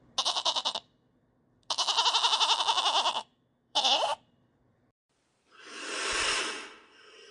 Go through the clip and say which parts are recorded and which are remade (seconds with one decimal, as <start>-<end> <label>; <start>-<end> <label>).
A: 0.0-3.3 recorded; 3.3-6.3 remade; 6.3-7.3 recorded